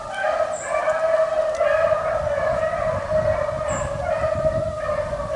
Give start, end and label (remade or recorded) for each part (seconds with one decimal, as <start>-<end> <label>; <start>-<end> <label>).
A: 0.0-5.4 recorded